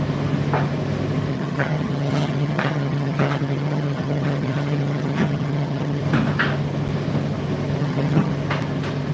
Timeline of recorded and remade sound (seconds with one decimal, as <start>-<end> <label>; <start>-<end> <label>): 0.0-1.3 recorded; 1.3-6.0 remade; 6.0-7.8 recorded; 7.8-8.3 remade; 8.3-9.1 recorded